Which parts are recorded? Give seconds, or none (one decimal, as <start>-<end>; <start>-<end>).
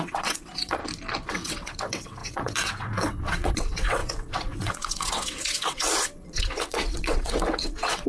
0.8-1.3